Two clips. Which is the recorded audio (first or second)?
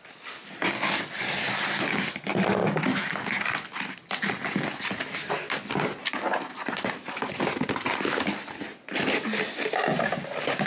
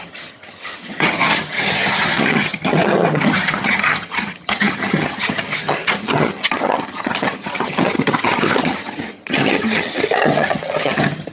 first